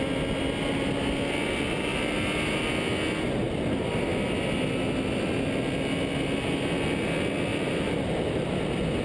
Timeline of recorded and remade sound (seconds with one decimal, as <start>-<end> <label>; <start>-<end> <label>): 0.0-7.5 recorded; 7.5-8.5 remade; 8.5-9.0 recorded